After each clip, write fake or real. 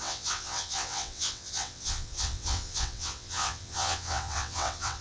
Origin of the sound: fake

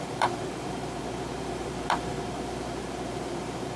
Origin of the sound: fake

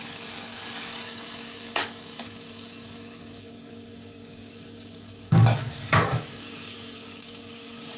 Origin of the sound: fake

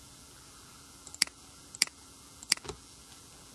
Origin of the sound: fake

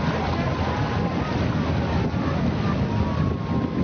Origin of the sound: real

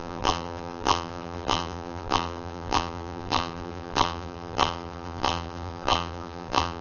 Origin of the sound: fake